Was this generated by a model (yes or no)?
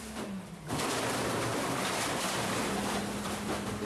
yes